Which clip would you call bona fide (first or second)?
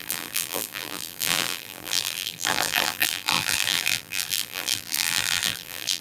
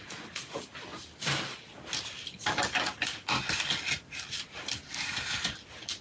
second